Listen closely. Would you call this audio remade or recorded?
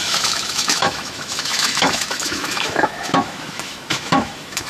remade